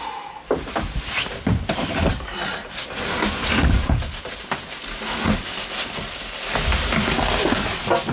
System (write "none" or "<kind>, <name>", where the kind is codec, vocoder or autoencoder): none